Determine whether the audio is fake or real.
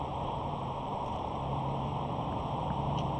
fake